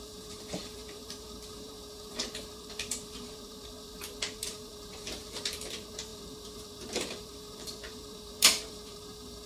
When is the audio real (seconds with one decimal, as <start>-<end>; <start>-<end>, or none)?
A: none